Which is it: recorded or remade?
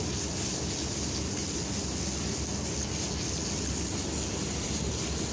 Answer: recorded